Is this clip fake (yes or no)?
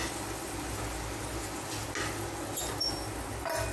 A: no